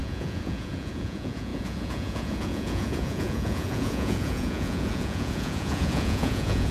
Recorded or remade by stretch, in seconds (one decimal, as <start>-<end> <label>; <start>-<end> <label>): 0.0-6.7 remade